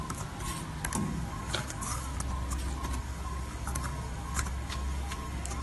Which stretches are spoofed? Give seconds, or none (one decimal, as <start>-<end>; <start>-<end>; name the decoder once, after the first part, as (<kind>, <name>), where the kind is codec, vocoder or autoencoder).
0.9-2.1 (codec, DAC); 3.0-5.6